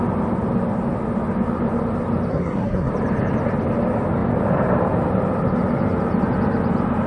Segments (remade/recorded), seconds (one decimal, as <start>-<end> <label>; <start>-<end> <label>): 0.0-2.3 recorded; 2.3-2.9 remade; 2.9-7.1 recorded